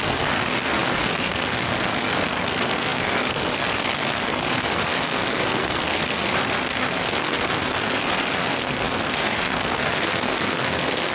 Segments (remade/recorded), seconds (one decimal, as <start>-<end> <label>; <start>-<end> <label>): 0.0-11.1 remade